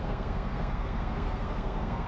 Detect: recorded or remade remade